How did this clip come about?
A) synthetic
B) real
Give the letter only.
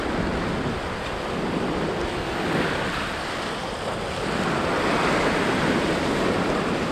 B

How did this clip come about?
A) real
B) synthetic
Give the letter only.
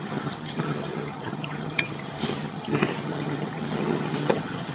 B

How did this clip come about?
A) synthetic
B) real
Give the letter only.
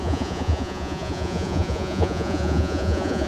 A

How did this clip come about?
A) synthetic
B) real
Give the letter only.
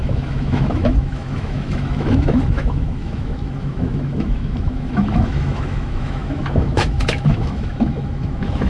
A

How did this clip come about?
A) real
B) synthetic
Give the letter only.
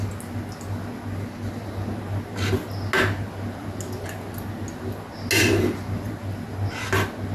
A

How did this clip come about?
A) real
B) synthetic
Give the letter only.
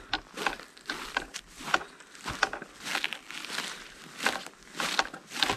A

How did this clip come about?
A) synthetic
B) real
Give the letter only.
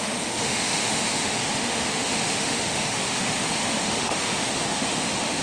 A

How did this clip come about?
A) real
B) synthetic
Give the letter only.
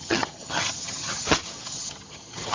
B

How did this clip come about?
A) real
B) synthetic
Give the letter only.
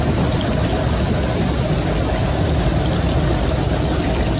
A